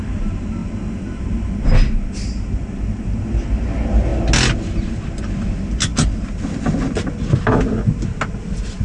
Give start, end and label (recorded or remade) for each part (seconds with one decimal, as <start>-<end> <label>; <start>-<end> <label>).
0.0-8.8 recorded